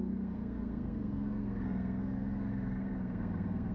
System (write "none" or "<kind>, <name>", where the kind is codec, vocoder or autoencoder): codec, SNAC